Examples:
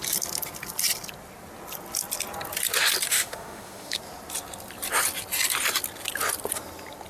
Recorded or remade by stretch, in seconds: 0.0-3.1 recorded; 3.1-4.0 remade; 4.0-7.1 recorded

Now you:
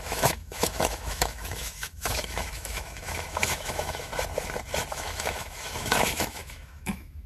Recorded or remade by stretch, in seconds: 0.0-4.1 remade; 4.1-4.9 recorded; 4.9-7.3 remade

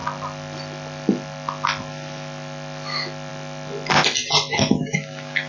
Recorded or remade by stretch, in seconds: 0.0-4.5 recorded; 4.5-5.5 remade

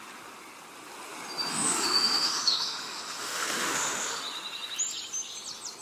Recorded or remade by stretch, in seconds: 0.0-1.5 recorded; 1.5-4.2 remade; 4.2-5.8 recorded

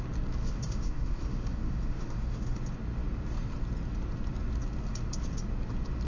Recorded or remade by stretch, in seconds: 0.0-0.4 recorded; 0.4-2.6 remade; 2.6-6.1 recorded